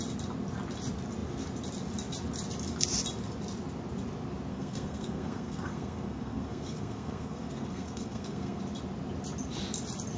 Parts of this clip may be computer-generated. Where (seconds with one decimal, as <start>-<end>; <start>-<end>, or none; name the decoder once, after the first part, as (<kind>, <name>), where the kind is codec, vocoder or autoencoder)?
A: 4.5-8.6 (codec, SNAC)